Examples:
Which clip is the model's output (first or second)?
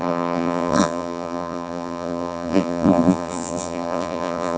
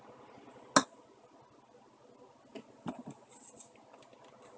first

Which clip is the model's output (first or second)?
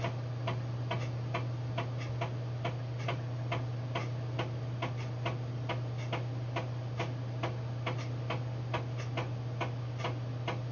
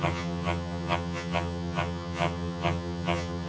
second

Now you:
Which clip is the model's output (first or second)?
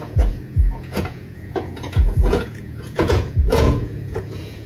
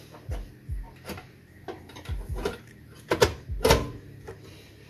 first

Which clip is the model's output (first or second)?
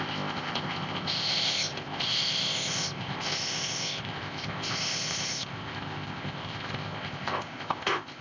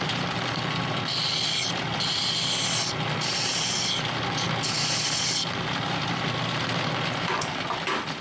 first